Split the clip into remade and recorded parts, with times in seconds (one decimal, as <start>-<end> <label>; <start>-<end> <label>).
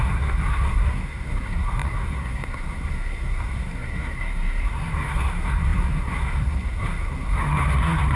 0.0-8.2 remade